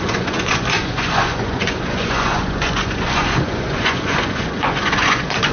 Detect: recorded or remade remade